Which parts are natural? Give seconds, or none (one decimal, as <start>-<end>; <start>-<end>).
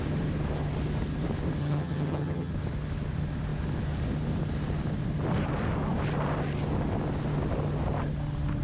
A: 0.0-1.6; 2.5-8.6